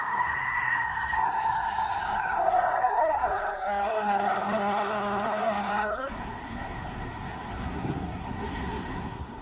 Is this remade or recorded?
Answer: remade